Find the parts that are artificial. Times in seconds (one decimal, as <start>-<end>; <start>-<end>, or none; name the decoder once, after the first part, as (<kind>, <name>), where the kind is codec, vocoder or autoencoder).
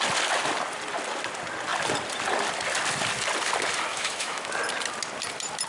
3.9-4.5 (autoencoder, DAC-VAE)